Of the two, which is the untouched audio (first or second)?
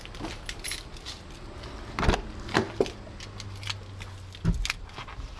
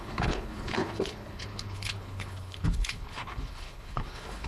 first